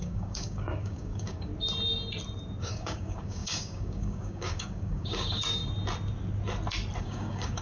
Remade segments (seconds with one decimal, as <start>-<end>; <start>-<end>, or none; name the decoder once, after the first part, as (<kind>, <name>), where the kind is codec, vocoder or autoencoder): 0.0-1.5 (codec, DAC); 2.6-5.6; 7.0-7.6